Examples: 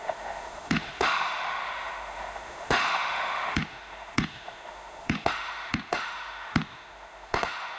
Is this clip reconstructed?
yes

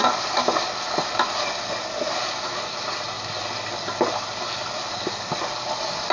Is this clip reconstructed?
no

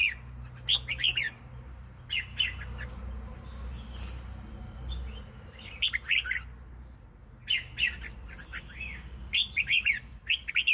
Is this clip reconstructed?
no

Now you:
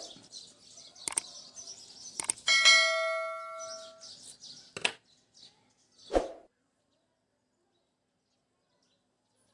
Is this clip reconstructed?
no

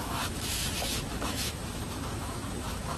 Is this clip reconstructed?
yes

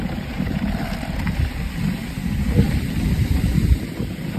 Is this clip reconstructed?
no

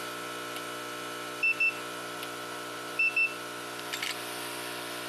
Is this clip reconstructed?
no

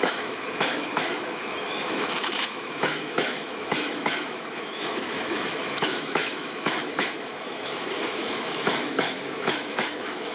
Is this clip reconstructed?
yes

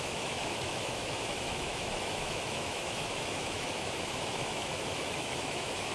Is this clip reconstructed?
yes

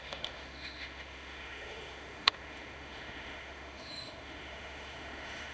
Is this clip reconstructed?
yes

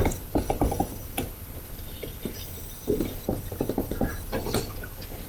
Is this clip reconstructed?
no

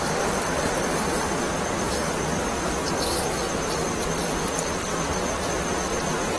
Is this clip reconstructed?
no